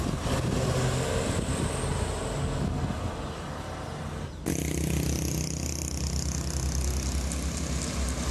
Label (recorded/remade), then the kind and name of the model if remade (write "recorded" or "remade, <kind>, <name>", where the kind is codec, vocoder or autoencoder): recorded